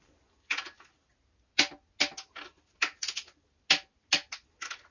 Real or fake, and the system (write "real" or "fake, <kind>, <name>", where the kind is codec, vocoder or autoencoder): real